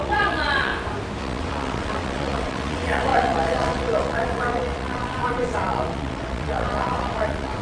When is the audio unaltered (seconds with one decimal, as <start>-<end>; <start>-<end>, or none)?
0.7-1.2